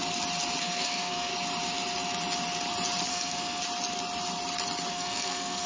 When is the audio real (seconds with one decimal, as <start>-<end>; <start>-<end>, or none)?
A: 0.0-0.6; 1.3-3.1; 3.6-4.9